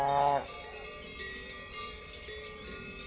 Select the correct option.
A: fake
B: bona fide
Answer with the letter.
B